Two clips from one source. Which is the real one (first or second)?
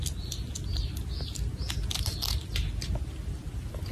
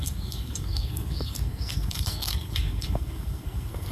first